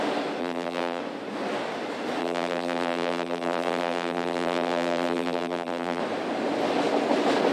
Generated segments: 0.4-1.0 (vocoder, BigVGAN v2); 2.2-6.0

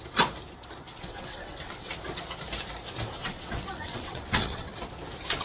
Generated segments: 0.9-1.9 (vocoder, WaveNeXt); 3.2-4.7

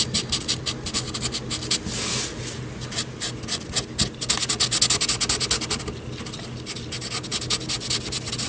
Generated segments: none